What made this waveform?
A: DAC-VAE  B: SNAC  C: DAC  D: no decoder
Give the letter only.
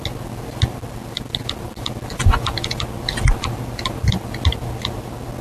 D